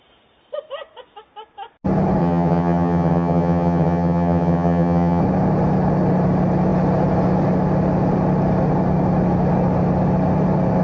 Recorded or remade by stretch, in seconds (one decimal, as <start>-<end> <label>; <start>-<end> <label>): 0.0-2.2 recorded; 2.2-5.2 remade; 5.2-10.8 recorded